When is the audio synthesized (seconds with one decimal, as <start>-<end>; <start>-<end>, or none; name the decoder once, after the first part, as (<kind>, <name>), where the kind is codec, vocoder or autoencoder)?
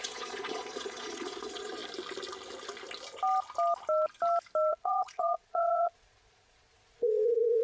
0.0-1.8 (vocoder, Vocos); 4.7-7.6